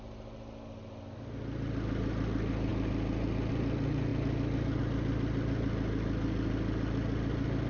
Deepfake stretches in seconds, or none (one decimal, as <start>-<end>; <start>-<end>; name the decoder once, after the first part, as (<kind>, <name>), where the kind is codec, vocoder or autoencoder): none